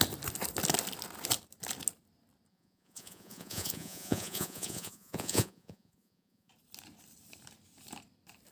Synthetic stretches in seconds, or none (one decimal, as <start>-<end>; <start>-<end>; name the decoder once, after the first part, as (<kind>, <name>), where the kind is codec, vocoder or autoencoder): 2.5-6.5 (vocoder, Vocos)